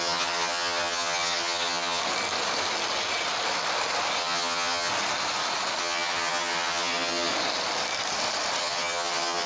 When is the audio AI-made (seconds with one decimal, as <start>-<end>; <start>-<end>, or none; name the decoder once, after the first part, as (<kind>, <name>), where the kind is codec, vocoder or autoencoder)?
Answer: 0.0-2.0 (vocoder, HiFi-GAN); 4.2-4.9; 5.8-7.3; 8.6-9.5